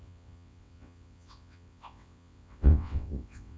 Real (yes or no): no